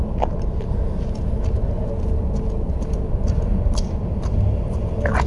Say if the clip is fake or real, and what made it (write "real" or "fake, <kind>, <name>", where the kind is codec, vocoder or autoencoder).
real